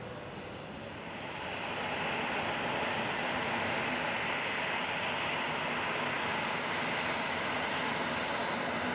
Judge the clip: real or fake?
real